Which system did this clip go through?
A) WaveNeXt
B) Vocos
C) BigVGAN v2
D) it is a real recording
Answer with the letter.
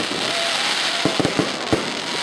D